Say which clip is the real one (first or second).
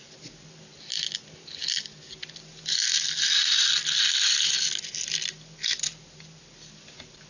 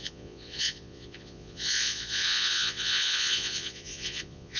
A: first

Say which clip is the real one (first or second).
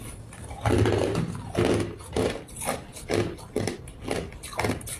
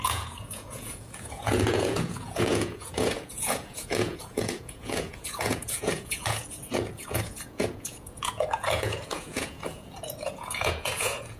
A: first